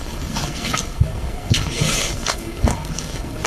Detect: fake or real fake